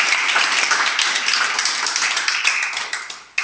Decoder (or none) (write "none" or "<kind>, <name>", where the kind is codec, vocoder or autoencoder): none